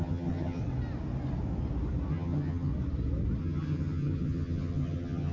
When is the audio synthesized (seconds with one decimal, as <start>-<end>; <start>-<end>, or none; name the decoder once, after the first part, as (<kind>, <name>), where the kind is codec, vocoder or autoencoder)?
0.0-0.6 (vocoder, HiFi-GAN); 2.1-2.7; 3.4-5.3